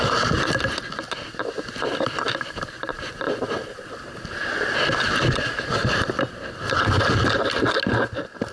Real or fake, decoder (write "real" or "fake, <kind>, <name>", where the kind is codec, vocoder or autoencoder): real